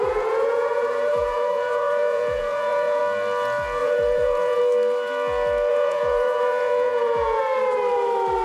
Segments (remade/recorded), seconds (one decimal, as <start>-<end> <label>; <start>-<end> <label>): 0.0-3.0 remade; 3.0-3.8 recorded; 3.8-4.6 remade; 4.6-5.7 recorded; 5.7-7.4 remade; 7.4-8.4 recorded